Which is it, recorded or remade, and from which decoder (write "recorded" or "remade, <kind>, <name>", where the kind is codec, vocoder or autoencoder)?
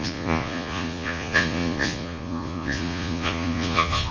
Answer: remade, vocoder, Vocos